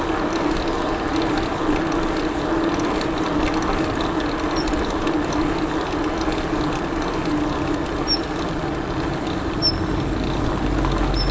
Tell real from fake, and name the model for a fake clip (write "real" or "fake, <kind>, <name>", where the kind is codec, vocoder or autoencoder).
real